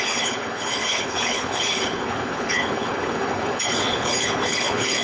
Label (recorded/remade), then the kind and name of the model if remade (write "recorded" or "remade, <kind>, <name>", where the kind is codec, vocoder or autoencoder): remade, codec, HILCodec